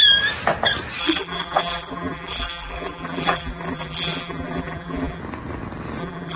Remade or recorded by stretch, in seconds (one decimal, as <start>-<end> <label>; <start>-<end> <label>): 0.0-1.0 recorded; 1.0-5.2 remade; 5.2-6.0 recorded; 6.0-6.4 remade